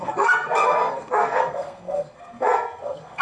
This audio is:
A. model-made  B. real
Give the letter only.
A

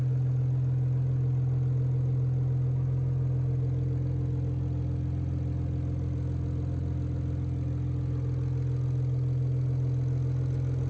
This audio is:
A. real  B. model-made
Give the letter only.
A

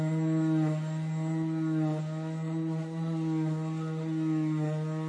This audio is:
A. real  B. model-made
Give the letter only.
A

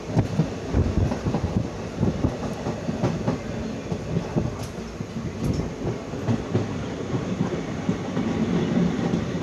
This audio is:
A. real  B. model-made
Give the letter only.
A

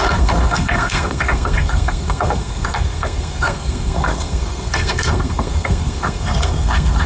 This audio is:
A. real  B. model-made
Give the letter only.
B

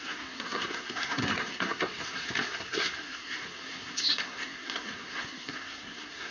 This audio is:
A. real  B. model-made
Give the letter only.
B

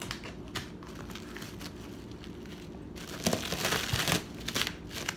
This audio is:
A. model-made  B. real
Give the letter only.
B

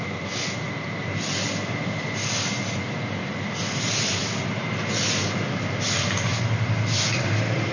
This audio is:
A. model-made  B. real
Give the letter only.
B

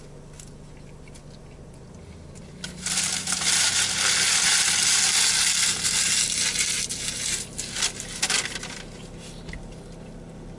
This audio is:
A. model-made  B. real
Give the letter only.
B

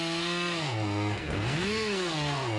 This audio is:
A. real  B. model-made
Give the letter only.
B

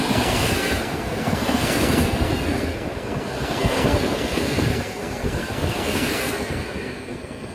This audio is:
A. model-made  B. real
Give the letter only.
A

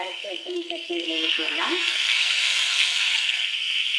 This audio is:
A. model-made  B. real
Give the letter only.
A